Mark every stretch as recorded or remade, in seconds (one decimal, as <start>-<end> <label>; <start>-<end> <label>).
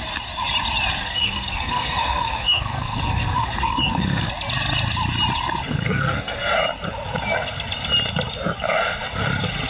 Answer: 0.0-1.0 recorded; 1.0-4.3 remade; 4.3-5.7 recorded; 5.7-6.5 remade; 6.5-9.7 recorded